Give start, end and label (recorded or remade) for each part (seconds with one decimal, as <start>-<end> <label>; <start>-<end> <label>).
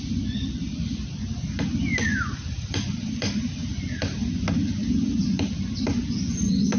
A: 0.0-2.1 recorded; 2.1-4.3 remade; 4.3-6.8 recorded